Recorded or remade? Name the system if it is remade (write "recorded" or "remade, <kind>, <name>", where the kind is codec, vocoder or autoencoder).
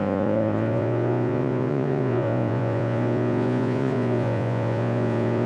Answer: remade, vocoder, Vocos